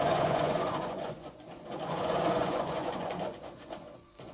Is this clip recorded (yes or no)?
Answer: no